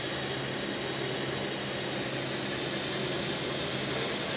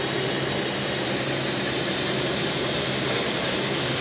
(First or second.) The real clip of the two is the first